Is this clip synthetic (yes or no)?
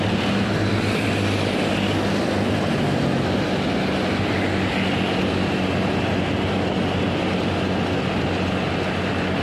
no